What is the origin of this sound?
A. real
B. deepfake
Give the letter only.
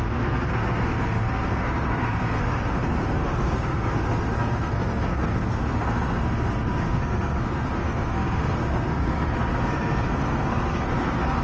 B